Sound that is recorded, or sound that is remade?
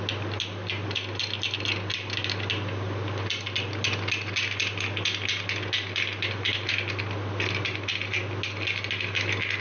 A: recorded